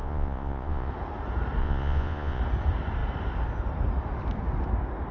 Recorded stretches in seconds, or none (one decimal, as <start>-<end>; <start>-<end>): 0.9-1.6; 2.4-5.1

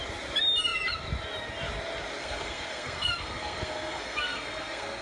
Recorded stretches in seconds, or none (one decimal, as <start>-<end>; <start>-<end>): 0.0-2.2

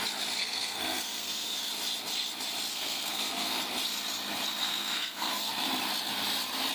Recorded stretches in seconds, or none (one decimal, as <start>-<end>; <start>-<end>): 0.0-0.4; 1.7-2.7; 3.6-4.6; 5.5-6.7

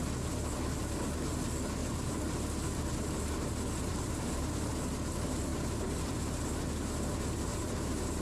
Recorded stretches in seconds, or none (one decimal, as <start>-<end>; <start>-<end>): 0.0-1.8; 2.3-3.9; 4.7-5.5; 6.6-7.5

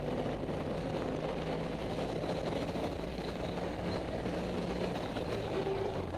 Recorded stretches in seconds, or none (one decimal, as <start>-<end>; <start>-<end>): 0.0-3.1

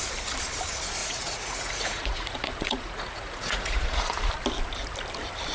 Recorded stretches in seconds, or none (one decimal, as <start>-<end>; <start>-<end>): 0.0-1.0; 4.3-5.5

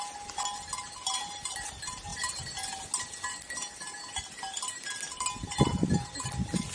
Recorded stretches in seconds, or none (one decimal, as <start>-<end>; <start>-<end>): 0.0-6.7

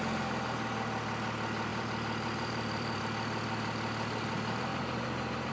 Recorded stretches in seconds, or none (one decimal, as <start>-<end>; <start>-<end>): 0.0-1.7; 3.0-4.7